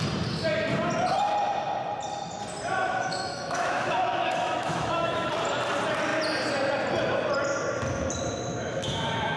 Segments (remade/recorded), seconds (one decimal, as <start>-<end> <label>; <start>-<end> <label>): 0.0-2.8 recorded; 2.8-5.3 remade; 5.3-8.7 recorded; 8.7-9.4 remade